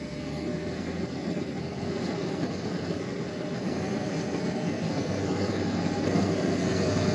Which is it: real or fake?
fake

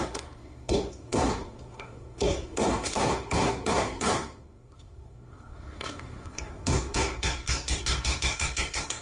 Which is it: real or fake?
fake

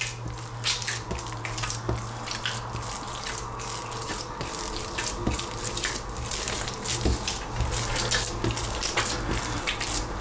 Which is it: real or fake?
real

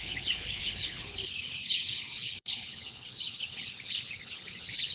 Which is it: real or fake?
fake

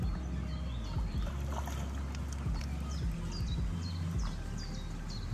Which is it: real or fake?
real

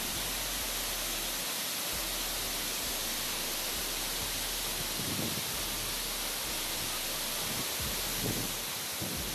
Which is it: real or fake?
real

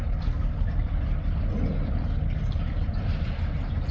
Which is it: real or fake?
real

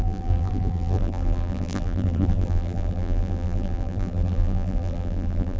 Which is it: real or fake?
fake